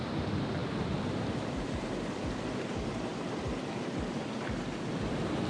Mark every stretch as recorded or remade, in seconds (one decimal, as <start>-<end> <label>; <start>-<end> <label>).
0.0-0.6 recorded; 0.6-1.2 remade; 1.2-3.1 recorded; 3.1-4.4 remade; 4.4-5.5 recorded